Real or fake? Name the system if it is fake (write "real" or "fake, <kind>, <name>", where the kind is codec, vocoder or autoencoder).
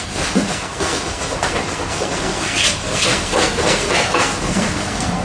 fake, codec, SNAC